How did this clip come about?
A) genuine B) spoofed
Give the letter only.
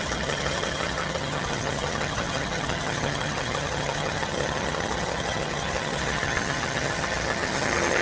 B